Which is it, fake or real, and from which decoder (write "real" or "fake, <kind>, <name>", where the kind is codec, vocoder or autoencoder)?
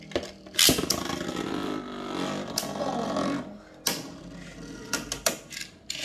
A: real